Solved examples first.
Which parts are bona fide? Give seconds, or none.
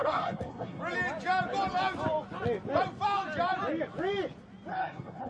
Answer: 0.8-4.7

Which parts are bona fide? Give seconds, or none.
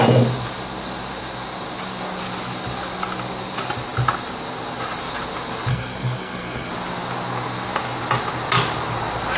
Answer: 0.0-5.7; 6.7-9.4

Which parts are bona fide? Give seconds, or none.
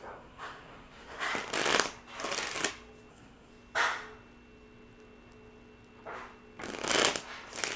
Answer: 1.3-3.1; 3.5-7.8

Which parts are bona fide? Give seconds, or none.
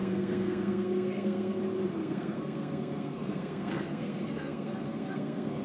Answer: 1.6-2.0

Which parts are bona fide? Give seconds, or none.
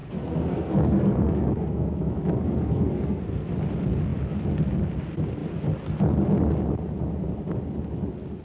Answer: 3.5-8.4